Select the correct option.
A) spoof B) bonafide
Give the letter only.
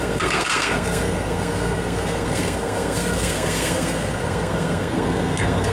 A